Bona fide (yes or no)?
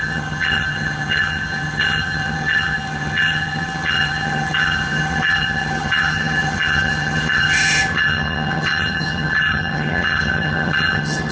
no